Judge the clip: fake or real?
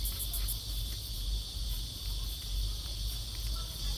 fake